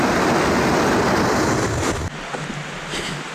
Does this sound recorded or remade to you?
recorded